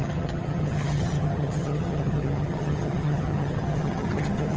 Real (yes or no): no